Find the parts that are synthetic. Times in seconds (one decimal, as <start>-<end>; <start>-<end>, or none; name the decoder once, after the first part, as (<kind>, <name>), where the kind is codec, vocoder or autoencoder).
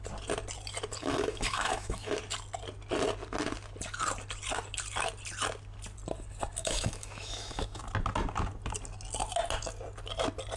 1.0-2.2 (autoencoder, DAC-VAE); 6.6-7.8